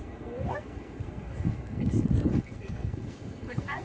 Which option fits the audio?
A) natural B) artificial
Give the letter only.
B